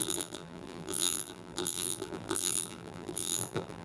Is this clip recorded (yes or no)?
no